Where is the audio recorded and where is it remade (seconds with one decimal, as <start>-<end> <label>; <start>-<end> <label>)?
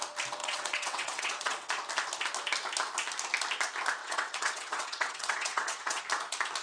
0.0-0.4 recorded; 0.4-1.7 remade; 1.7-4.0 recorded; 4.0-6.0 remade; 6.0-6.6 recorded